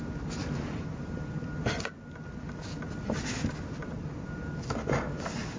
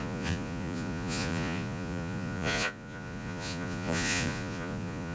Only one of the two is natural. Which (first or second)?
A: first